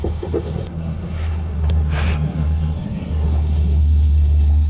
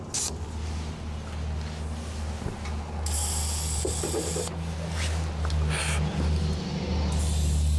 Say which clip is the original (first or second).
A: second